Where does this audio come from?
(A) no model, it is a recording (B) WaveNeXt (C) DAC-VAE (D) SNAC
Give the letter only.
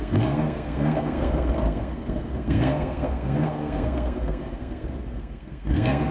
D